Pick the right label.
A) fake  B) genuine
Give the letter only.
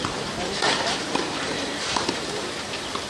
A